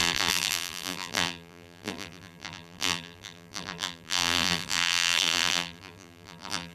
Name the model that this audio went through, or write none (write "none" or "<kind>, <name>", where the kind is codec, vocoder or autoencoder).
vocoder, BigVGAN v2